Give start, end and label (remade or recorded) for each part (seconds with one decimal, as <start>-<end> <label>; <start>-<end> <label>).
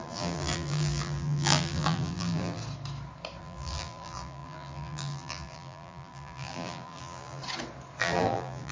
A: 0.0-2.6 remade; 2.6-3.4 recorded; 3.4-7.4 remade; 7.4-8.0 recorded; 8.0-8.7 remade